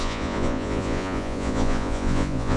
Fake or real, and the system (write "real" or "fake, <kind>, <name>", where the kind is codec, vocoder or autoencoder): fake, vocoder, Vocos